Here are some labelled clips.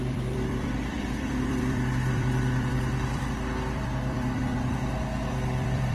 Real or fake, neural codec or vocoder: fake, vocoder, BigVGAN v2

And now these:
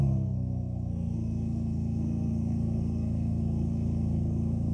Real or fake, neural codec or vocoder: fake, codec, SNAC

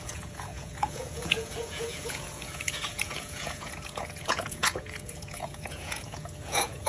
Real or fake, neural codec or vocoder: fake, vocoder, Vocos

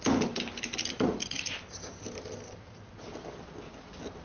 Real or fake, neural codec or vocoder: real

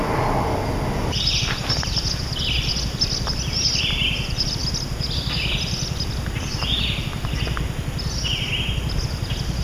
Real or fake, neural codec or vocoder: real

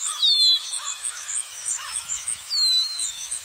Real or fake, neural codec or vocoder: fake, autoencoder, DAC-VAE